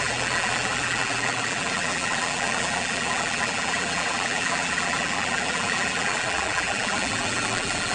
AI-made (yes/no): yes